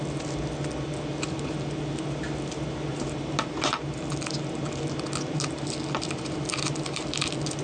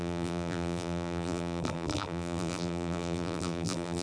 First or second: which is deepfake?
second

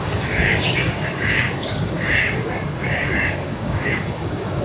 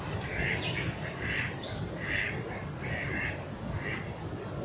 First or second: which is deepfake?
first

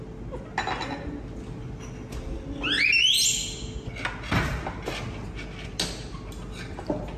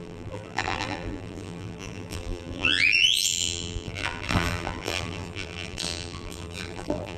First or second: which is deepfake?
second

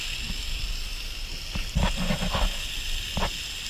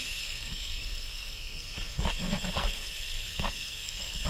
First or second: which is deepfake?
second